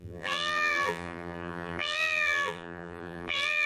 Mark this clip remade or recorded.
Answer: remade